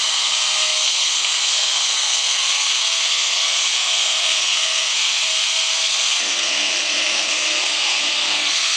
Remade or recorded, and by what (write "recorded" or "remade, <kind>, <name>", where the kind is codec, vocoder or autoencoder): remade, codec, SNAC